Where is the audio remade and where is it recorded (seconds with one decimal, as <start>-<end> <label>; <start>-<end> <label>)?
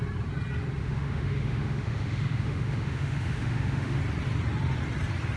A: 0.0-0.8 recorded; 0.8-4.0 remade; 4.0-5.4 recorded